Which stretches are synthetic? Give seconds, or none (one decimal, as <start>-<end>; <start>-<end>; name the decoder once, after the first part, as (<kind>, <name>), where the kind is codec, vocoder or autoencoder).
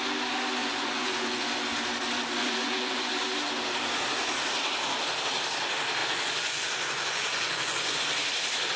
0.6-1.4 (vocoder, Vocos); 2.4-3.1; 6.0-8.0